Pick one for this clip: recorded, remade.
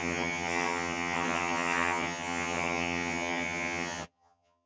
remade